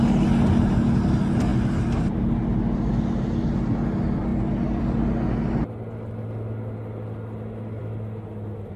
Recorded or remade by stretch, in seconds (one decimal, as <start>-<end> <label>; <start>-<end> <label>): 0.0-8.8 recorded